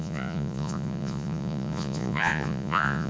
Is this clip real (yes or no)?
no